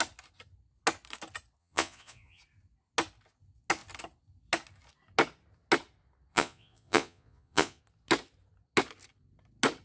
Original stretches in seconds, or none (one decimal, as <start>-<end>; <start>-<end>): 0.0-1.6; 2.4-6.3; 7.8-9.8